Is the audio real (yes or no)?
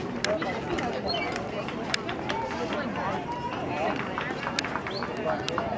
yes